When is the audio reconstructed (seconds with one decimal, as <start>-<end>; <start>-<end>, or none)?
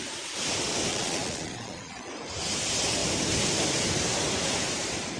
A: 0.9-2.1